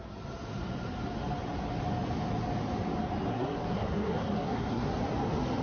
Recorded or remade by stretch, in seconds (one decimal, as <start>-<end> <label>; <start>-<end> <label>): 0.0-3.3 recorded; 3.3-4.9 remade; 4.9-5.6 recorded